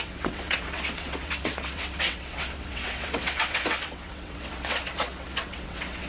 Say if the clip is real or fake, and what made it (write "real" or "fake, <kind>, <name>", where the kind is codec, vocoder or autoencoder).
fake, vocoder, WaveNeXt